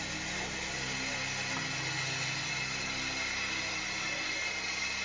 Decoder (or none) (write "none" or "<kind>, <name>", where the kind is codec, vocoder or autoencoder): none